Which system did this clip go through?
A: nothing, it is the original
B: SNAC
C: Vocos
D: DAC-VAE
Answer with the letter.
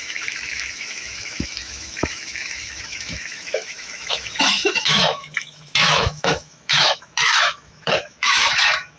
D